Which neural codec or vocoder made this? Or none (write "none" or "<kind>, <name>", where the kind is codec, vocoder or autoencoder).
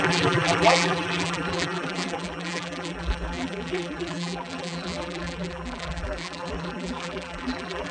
vocoder, BigVGAN v2